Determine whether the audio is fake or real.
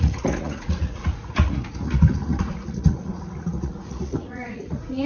fake